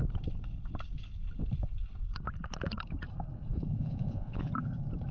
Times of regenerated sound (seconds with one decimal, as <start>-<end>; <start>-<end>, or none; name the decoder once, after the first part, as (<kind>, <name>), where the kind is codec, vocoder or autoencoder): 3.5-4.5 (vocoder, Vocos)